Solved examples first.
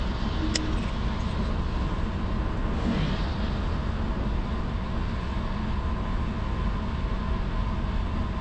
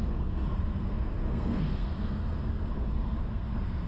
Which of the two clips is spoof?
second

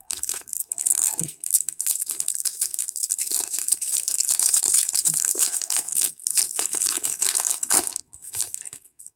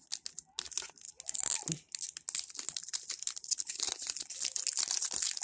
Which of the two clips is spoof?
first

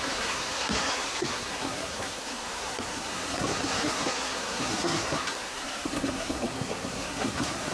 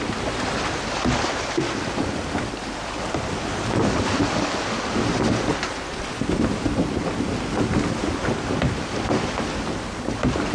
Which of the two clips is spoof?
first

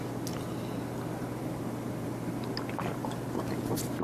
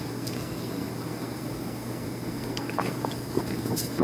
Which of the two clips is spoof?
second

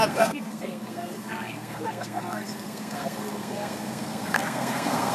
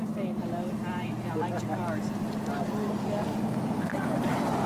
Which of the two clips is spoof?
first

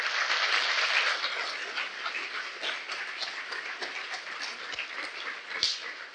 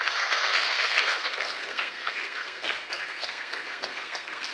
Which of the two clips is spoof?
second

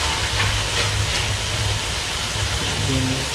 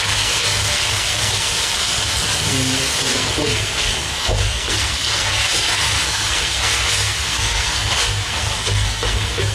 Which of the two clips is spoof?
second